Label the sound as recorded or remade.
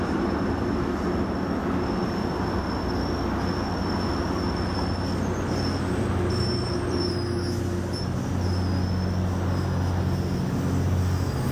recorded